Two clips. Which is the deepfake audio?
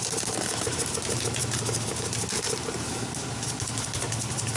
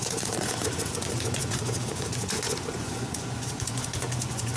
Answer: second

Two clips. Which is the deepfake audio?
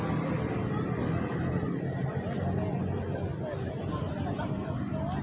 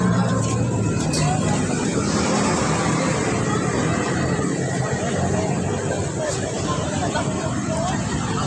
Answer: second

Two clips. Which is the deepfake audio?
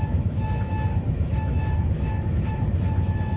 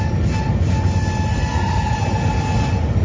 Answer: first